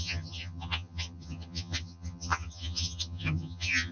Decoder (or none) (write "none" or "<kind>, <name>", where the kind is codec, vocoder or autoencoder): vocoder, HiFi-GAN